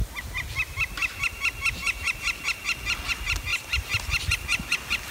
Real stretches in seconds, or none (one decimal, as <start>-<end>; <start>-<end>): 0.0-3.5; 4.2-5.1